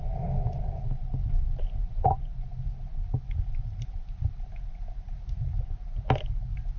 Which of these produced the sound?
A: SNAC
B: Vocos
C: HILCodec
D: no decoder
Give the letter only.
D